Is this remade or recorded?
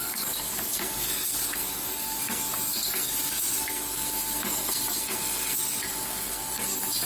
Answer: remade